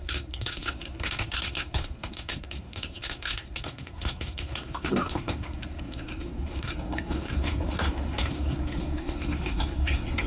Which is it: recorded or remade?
remade